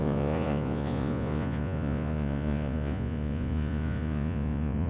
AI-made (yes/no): yes